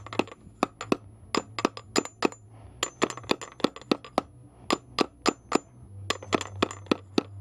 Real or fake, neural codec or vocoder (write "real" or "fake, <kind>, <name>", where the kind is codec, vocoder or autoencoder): real